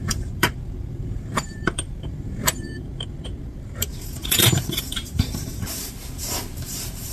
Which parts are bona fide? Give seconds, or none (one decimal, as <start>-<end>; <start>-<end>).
2.9-3.4